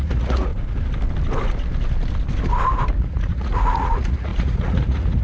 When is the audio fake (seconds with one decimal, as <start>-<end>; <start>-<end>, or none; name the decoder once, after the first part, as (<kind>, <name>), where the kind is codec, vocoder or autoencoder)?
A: 0.0-0.5 (vocoder, Vocos); 3.0-5.2